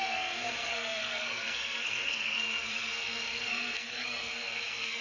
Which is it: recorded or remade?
remade